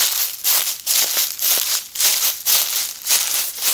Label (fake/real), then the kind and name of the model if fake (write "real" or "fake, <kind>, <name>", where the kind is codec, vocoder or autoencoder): real